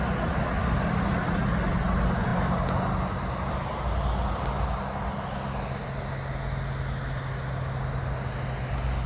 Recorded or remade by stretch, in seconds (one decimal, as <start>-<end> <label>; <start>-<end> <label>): 0.0-9.1 recorded